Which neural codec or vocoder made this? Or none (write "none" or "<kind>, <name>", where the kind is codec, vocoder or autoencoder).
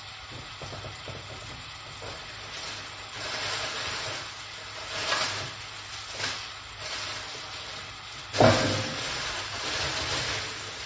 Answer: none